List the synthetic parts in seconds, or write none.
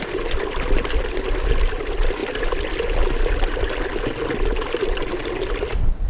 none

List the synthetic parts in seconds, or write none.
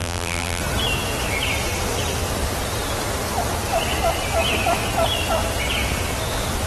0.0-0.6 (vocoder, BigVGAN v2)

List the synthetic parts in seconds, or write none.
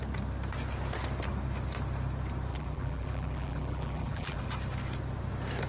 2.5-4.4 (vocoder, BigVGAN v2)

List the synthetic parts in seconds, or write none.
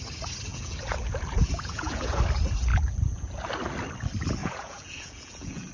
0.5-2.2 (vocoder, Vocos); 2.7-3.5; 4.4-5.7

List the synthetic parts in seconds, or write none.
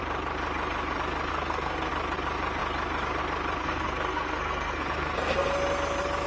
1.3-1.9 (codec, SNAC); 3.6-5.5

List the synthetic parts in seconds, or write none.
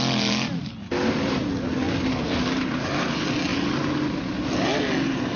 none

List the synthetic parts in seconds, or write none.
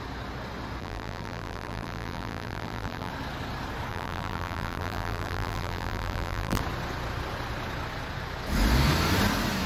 0.8-3.1 (vocoder, BigVGAN v2); 3.9-6.6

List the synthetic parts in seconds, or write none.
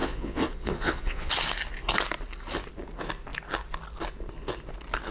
0.0-1.3 (vocoder, Vocos)